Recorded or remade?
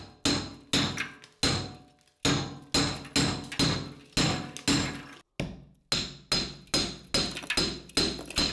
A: recorded